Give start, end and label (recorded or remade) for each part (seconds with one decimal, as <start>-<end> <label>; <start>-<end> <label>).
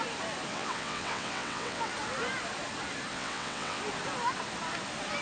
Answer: 0.0-0.5 recorded; 0.5-1.9 remade; 1.9-3.1 recorded; 3.1-3.8 remade; 3.8-5.2 recorded